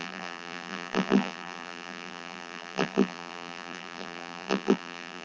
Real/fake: fake